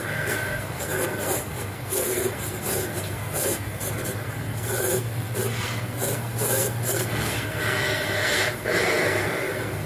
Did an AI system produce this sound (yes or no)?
yes